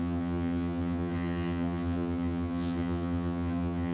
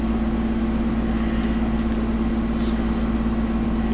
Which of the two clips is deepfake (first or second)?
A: first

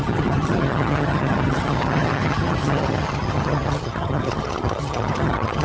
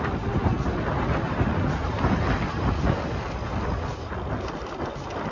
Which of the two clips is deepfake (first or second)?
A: first